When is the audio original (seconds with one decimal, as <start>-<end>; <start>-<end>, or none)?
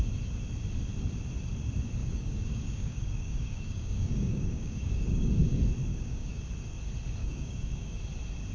0.0-2.0; 5.3-5.9; 6.4-7.2; 8.0-8.5